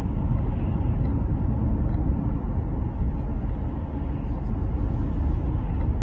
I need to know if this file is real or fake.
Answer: real